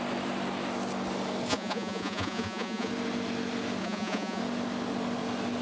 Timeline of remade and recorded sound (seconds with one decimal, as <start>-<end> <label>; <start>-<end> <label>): 0.0-1.5 recorded; 1.5-2.9 remade; 2.9-3.8 recorded; 3.8-4.4 remade; 4.4-5.6 recorded